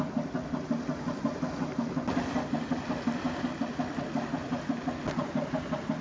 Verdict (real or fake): real